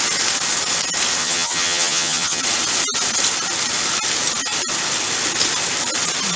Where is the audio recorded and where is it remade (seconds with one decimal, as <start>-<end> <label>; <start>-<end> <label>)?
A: 0.0-1.2 recorded; 1.2-2.4 remade; 2.4-6.4 recorded